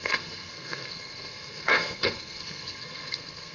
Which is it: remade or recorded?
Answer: remade